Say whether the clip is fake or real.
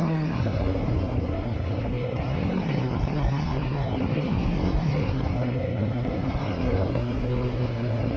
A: fake